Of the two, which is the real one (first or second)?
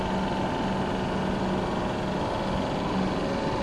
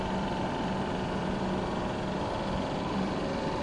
first